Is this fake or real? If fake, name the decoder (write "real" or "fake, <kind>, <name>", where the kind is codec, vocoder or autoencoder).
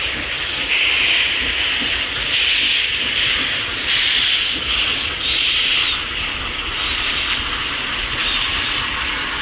real